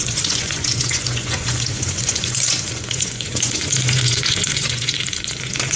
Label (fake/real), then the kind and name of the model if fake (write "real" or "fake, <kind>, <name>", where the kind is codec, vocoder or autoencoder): fake, vocoder, Vocos